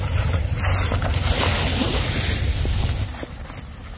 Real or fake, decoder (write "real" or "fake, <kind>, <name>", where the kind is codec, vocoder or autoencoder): real